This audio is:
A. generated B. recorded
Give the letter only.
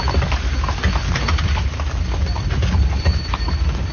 B